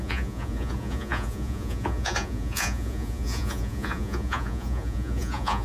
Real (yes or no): no